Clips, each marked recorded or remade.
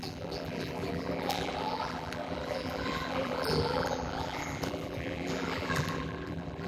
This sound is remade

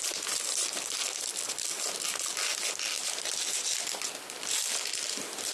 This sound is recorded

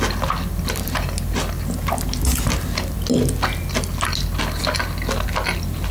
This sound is recorded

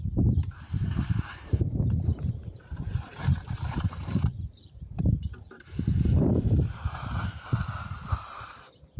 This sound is remade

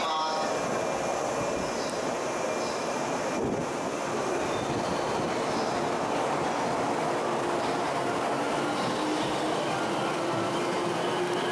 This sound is recorded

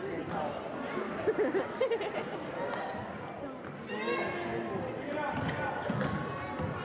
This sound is recorded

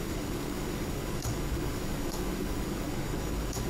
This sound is remade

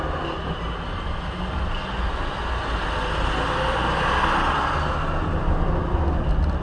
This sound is recorded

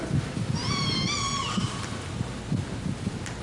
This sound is recorded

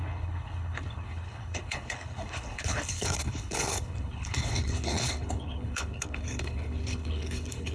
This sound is remade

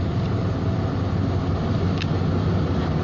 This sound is recorded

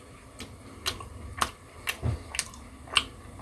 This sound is recorded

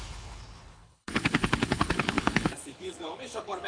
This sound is remade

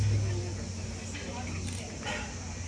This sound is recorded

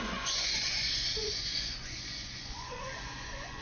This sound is remade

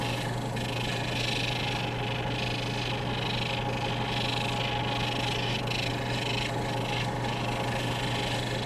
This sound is recorded